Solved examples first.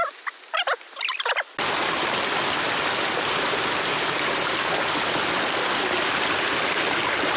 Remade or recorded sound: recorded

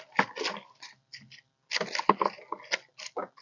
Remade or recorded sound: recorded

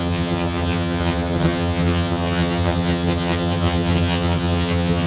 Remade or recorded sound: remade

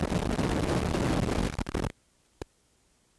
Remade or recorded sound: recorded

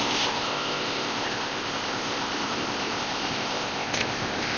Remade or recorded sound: remade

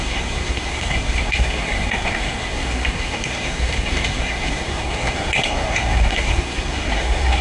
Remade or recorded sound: remade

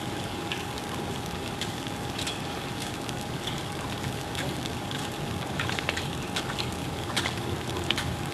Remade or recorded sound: remade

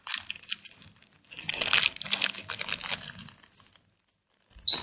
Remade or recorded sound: recorded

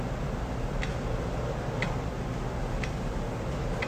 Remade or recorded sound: recorded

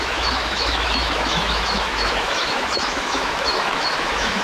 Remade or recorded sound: remade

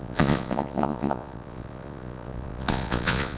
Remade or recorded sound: remade